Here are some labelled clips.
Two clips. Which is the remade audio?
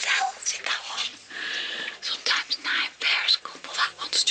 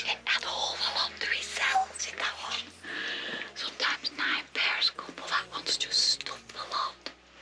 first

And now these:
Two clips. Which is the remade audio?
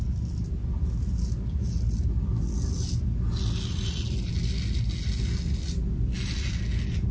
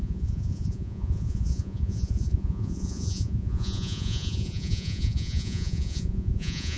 second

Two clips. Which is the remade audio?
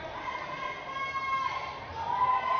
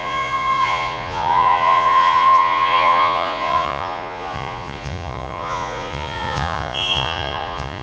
second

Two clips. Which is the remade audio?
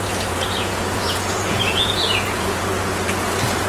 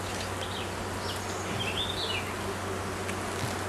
first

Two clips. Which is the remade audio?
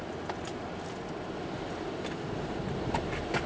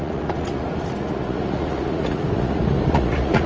second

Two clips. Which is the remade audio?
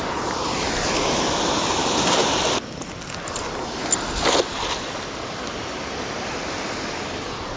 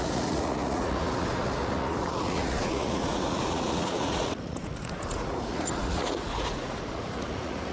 second